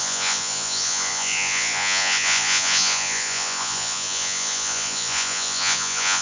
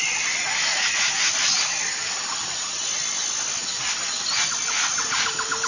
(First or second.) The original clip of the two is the second